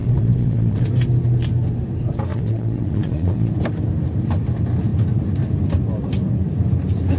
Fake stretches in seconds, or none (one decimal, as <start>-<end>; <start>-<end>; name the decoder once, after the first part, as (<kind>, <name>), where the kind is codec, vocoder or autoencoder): 0.0-0.9 (vocoder, Vocos); 2.3-3.5